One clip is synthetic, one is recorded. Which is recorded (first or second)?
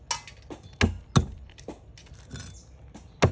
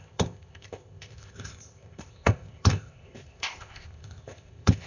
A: first